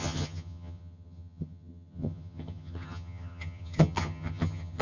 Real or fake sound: fake